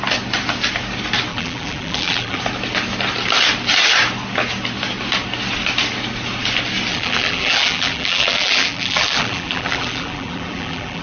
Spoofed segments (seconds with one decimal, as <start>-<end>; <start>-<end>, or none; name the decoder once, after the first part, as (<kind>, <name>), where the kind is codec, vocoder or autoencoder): 1.3-2.4 (vocoder, BigVGAN v2); 6.9-11.0